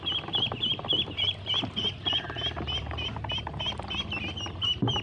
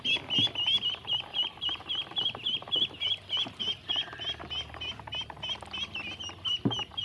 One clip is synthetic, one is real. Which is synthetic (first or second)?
first